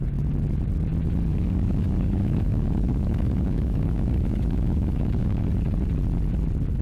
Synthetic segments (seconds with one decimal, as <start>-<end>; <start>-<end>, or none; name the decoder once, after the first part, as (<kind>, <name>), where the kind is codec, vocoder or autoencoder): 1.3-5.4 (codec, DAC)